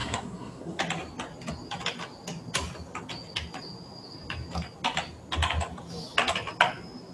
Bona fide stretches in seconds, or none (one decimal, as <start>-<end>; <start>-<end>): 0.8-7.1